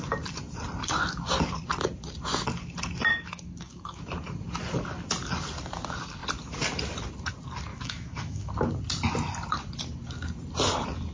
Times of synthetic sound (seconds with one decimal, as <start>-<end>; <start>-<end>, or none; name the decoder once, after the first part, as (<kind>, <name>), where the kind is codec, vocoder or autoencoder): 3.1-4.0 (autoencoder, DAC-VAE); 7.7-8.5